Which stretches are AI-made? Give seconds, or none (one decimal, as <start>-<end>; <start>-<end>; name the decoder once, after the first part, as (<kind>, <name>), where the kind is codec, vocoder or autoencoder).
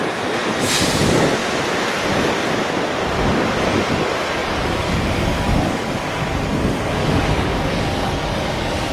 4.4-6.1 (codec, DAC); 7.0-8.9